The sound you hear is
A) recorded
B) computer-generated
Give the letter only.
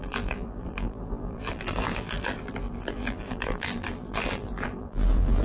B